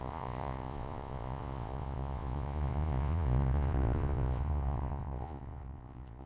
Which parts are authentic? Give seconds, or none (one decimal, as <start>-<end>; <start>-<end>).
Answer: none